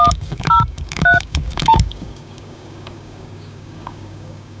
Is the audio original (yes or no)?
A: no